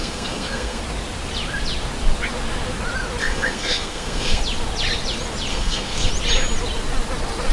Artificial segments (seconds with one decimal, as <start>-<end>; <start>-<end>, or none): 0.0-0.8; 3.2-4.4; 5.5-6.1